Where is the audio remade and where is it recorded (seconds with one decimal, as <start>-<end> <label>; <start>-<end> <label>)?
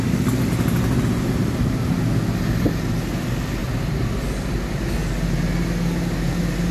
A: 0.0-3.6 recorded; 3.6-4.6 remade; 4.6-6.7 recorded